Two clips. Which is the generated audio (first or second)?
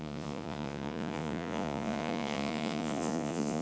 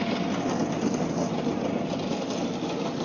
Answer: first